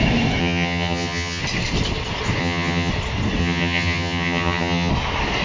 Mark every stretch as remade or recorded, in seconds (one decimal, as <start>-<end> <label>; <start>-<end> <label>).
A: 0.0-0.4 recorded; 0.4-1.4 remade; 1.4-2.4 recorded; 2.4-2.9 remade; 2.9-3.4 recorded; 3.4-4.9 remade; 4.9-5.4 recorded